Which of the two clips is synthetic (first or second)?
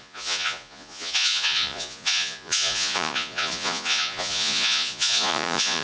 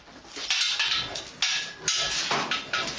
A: first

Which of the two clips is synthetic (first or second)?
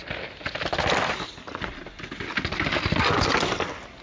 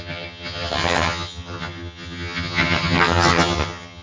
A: second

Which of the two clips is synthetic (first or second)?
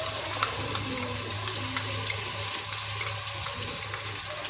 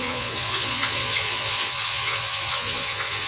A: second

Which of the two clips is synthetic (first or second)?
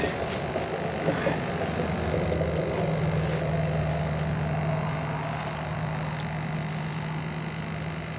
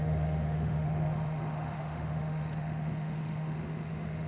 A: second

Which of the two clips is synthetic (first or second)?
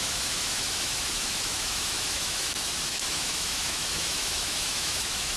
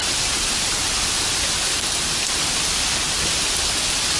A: first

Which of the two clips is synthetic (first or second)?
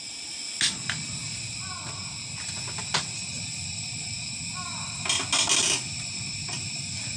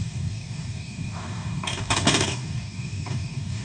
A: second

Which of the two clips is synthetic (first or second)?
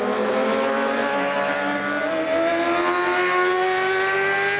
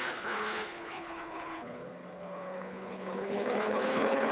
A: second